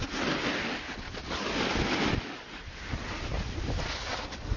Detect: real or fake real